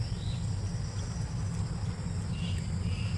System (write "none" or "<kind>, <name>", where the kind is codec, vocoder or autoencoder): none